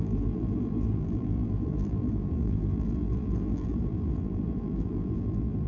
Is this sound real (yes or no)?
no